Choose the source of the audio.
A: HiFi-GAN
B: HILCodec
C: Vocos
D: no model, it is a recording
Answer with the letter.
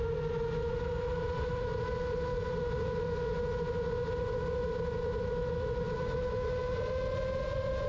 D